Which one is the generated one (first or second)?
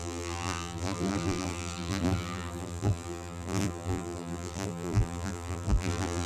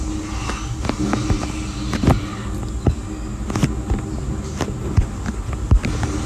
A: first